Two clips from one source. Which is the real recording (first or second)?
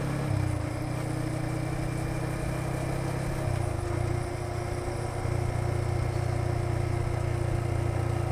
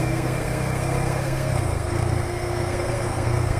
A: first